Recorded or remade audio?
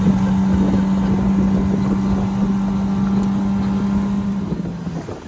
recorded